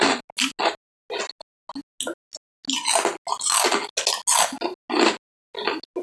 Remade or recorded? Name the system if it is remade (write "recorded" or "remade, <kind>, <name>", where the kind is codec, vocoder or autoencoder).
recorded